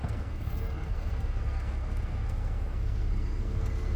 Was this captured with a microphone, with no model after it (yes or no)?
no